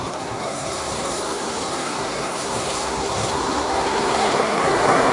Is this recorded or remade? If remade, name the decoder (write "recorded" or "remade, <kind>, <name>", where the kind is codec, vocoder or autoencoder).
remade, codec, SNAC